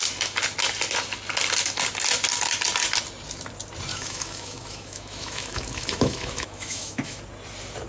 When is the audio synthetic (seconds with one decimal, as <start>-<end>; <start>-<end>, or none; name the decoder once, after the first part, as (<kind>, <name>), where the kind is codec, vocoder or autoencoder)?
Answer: 3.9-7.2 (autoencoder, DAC-VAE)